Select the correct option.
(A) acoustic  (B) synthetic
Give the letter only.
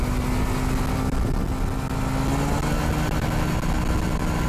A